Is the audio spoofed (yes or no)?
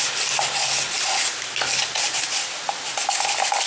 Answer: no